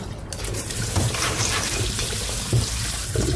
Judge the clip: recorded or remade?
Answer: remade